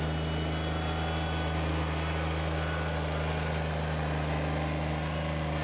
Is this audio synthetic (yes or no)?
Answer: no